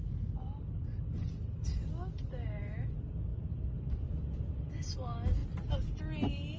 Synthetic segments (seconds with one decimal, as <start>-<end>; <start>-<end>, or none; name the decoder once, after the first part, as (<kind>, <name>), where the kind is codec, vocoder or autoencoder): none